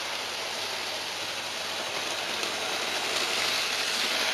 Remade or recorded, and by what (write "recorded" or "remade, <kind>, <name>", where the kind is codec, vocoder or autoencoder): recorded